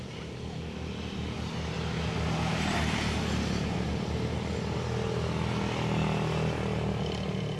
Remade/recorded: recorded